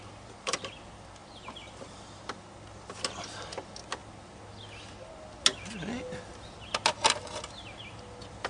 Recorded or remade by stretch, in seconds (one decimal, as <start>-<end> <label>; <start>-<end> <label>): 0.0-1.2 recorded; 1.2-2.5 remade; 2.5-8.5 recorded